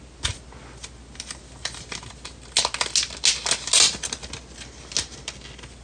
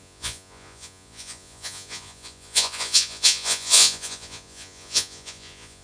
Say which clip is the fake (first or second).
second